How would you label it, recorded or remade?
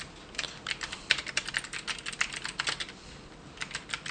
recorded